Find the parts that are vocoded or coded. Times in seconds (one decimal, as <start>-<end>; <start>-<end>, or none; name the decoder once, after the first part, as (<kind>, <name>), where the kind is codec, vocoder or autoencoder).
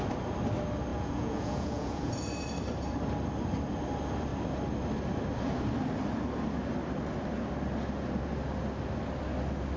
0.9-2.1 (vocoder, Vocos)